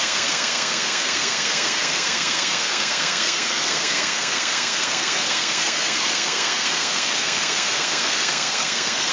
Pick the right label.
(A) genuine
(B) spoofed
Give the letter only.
B